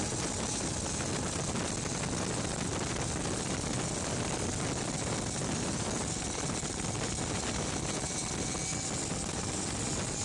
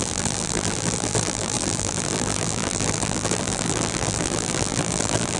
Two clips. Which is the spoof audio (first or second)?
second